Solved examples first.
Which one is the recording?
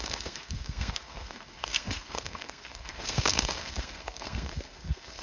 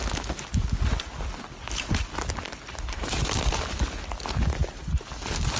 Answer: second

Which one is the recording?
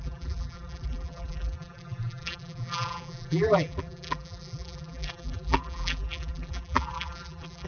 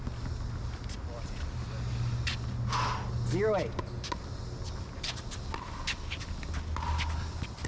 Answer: second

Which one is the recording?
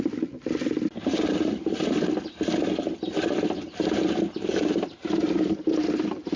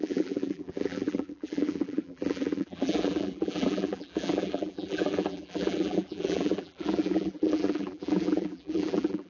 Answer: first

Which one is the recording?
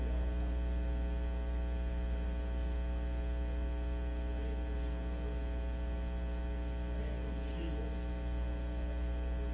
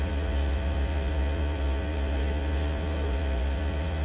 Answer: first